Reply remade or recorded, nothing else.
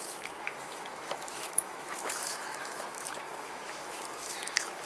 remade